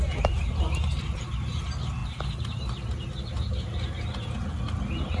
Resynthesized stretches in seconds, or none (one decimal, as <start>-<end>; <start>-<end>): none